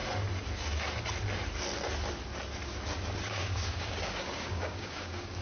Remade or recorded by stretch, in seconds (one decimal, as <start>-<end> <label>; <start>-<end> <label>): 0.0-3.2 recorded; 3.2-5.4 remade